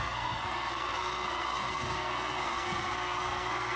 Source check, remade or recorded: remade